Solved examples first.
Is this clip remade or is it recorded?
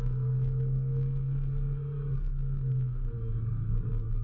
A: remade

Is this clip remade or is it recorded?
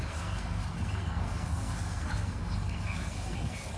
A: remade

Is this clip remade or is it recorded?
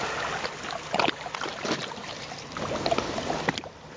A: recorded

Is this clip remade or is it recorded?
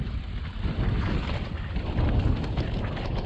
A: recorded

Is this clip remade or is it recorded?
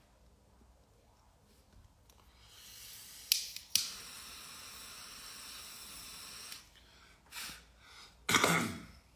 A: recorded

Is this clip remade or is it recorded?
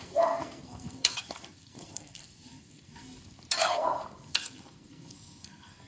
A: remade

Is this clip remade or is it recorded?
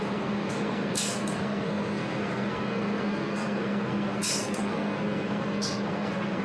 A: remade